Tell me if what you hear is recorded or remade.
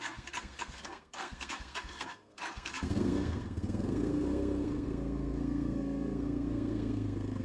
remade